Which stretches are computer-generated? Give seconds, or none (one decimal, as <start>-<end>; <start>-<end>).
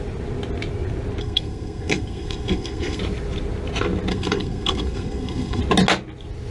1.2-3.0; 4.1-5.6